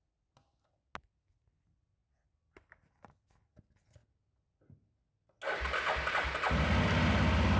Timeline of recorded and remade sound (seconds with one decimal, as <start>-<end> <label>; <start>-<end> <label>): 0.0-7.6 recorded